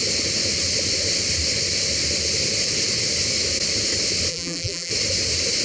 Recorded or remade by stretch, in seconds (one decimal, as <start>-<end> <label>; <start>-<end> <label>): 0.0-4.3 recorded; 4.3-4.9 remade; 4.9-5.6 recorded